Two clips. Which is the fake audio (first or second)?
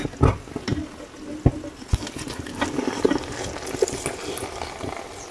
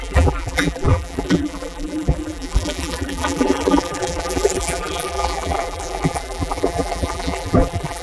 second